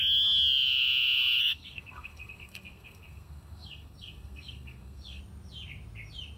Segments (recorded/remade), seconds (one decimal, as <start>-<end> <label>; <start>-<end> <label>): 0.0-1.4 recorded; 1.4-5.2 remade; 5.2-6.4 recorded